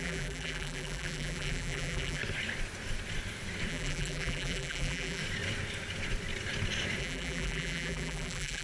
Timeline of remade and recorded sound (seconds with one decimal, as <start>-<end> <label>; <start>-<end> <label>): 0.0-2.2 remade; 2.2-3.7 recorded; 3.7-5.2 remade; 5.2-7.0 recorded; 7.0-8.6 remade